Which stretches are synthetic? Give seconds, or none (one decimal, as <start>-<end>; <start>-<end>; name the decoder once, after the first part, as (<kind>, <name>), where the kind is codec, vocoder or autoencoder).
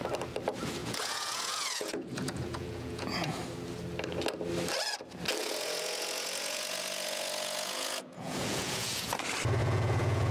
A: 0.8-3.4 (vocoder, Vocos); 5.4-9.1; 9.6-10.3